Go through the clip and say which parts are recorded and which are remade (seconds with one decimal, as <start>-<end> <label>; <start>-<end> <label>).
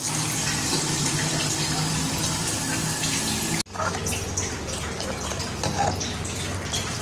0.0-7.0 recorded